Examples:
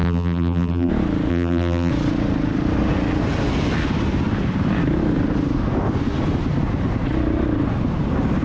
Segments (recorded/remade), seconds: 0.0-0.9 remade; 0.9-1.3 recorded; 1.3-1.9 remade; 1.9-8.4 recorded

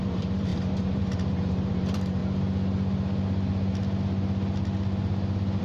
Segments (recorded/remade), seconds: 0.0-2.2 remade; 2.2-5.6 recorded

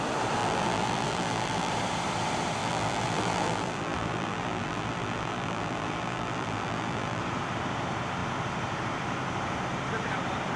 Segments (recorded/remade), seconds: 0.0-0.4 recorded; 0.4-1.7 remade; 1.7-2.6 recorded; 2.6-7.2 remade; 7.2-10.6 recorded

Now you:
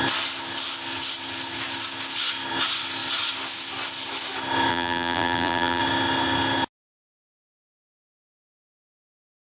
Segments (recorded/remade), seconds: 0.0-4.7 recorded; 4.7-5.8 remade; 5.8-9.4 recorded

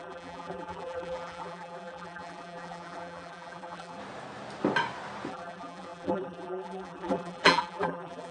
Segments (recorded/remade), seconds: 0.0-4.0 remade; 4.0-5.3 recorded; 5.3-8.3 remade

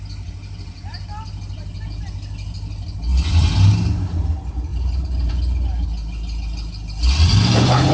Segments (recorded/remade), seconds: 0.0-3.1 recorded; 3.1-3.7 remade; 3.7-4.7 recorded; 4.7-5.3 remade; 5.3-7.9 recorded